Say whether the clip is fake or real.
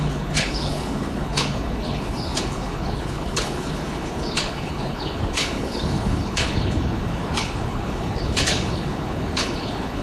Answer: fake